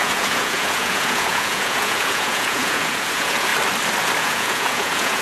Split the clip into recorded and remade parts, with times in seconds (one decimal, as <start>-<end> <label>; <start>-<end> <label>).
0.0-3.5 remade; 3.5-4.2 recorded; 4.2-5.2 remade